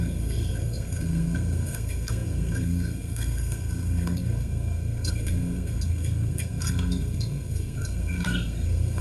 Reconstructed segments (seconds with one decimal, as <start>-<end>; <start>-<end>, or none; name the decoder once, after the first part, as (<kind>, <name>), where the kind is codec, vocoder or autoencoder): 0.0-9.0 (codec, SNAC)